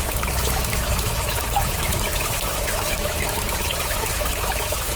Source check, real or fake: fake